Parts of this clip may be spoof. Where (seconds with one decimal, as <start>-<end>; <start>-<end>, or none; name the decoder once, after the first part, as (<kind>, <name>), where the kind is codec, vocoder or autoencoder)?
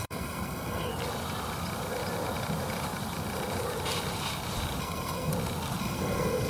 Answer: 0.0-0.9 (codec, SNAC); 4.8-5.3; 5.8-6.5